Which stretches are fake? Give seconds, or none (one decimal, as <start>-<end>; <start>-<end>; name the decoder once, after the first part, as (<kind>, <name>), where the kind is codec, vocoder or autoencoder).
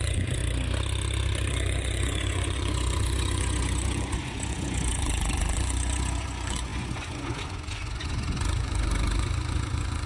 0.0-0.4 (vocoder, Vocos); 1.5-10.1